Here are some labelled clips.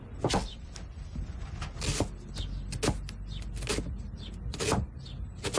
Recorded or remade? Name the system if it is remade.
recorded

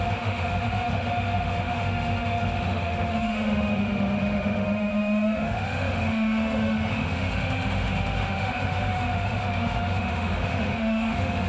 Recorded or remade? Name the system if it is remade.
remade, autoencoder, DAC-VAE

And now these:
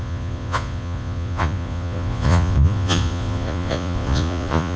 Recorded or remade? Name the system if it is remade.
remade, vocoder, Vocos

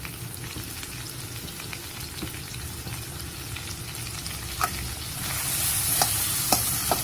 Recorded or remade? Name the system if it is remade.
recorded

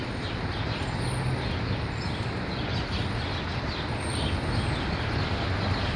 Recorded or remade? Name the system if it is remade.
recorded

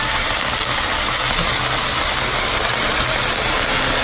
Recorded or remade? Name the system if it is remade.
recorded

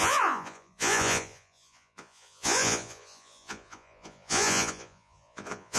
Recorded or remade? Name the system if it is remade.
remade, vocoder, Vocos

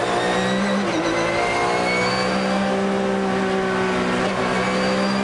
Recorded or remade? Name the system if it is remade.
recorded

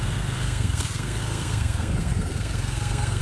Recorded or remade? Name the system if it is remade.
remade, codec, SNAC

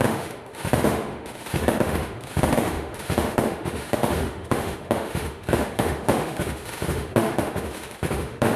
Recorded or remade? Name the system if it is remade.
remade, autoencoder, DAC-VAE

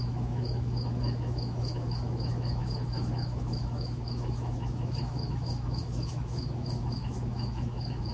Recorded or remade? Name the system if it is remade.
remade, autoencoder, DAC-VAE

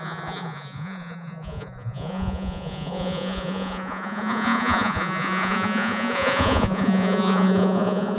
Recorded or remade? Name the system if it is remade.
remade, vocoder, Vocos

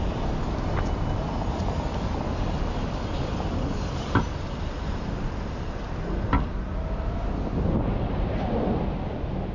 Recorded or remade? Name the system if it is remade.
recorded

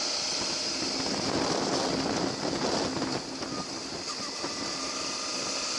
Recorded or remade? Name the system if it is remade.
recorded